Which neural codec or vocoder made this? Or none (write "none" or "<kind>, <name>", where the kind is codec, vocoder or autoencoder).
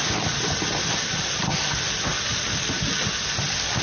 none